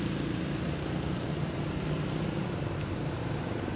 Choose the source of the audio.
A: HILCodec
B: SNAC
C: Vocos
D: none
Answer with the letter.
D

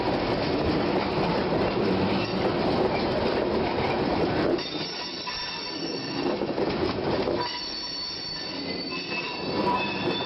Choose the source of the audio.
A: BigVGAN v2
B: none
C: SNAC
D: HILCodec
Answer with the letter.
B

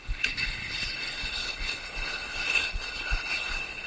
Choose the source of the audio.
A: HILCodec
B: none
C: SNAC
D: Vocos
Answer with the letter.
A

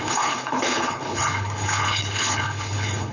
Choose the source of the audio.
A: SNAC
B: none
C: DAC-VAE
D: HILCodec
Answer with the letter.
D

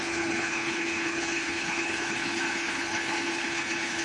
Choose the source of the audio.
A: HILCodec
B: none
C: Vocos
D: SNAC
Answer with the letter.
A